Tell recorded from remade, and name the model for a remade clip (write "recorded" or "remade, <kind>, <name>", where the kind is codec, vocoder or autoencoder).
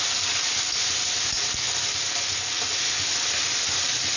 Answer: recorded